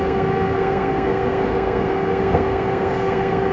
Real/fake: fake